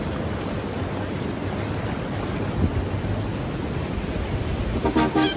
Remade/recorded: recorded